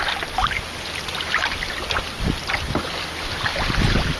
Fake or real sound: real